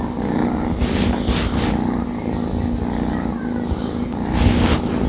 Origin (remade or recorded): recorded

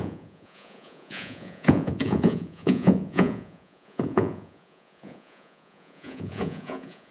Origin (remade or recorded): remade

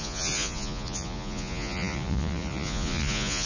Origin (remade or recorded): remade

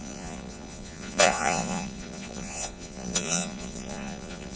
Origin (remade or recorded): remade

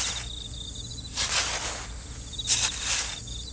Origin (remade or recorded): recorded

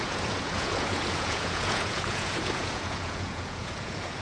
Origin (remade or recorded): remade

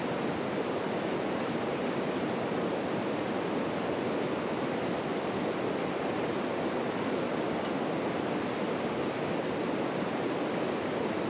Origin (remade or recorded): recorded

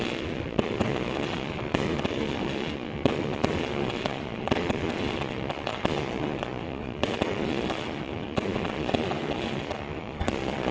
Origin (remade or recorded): remade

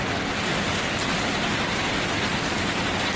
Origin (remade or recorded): recorded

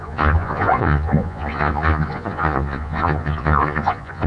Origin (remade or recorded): remade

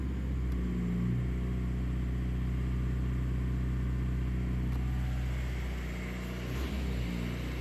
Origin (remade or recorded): recorded